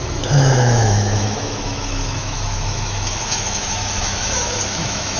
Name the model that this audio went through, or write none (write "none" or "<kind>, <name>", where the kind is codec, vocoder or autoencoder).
autoencoder, DAC-VAE